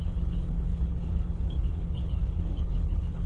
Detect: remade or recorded remade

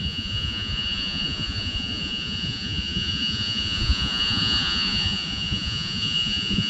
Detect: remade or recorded remade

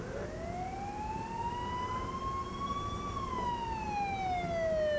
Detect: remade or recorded recorded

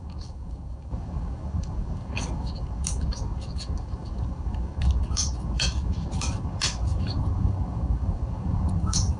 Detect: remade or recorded remade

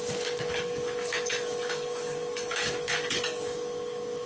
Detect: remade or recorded remade